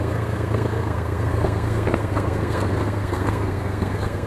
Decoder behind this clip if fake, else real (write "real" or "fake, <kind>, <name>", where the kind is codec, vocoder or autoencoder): fake, codec, SNAC